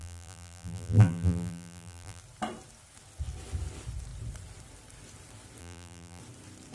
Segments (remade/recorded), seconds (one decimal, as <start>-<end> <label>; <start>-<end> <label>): 0.0-2.2 remade; 2.2-5.6 recorded; 5.6-6.2 remade; 6.2-6.7 recorded